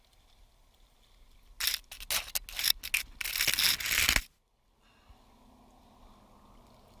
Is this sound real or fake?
real